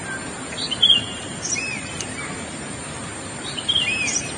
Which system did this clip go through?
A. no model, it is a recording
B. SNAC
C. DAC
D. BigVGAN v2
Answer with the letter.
D